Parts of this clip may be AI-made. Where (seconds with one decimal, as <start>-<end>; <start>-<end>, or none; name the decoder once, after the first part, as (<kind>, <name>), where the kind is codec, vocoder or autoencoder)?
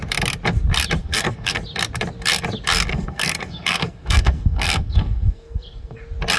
1.0-1.6 (codec, SNAC); 2.9-6.0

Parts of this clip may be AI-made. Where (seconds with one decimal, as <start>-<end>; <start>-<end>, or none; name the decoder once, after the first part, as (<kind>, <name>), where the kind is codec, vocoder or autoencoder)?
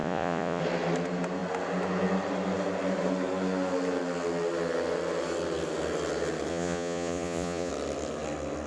0.0-0.6 (vocoder, Vocos); 6.5-7.7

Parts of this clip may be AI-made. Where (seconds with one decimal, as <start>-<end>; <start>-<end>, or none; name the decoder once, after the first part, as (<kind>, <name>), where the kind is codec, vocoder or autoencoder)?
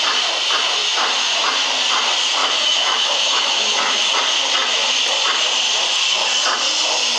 2.4-4.0 (autoencoder, DAC-VAE)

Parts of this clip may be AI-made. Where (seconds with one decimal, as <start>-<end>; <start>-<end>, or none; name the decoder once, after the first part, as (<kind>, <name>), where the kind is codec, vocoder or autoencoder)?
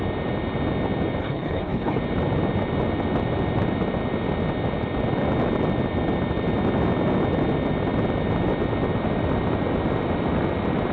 1.2-2.0 (codec, HILCodec)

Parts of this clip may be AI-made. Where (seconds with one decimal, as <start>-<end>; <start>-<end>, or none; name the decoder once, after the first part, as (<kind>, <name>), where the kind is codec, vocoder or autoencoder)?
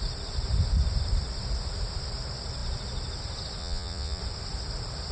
3.6-4.2 (vocoder, Vocos)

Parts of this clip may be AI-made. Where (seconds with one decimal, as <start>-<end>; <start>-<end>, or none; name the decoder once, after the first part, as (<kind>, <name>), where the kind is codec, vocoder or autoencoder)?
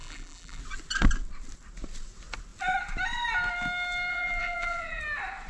0.0-0.6 (vocoder, BigVGAN v2); 4.1-5.0